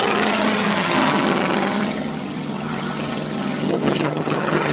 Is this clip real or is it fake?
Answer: fake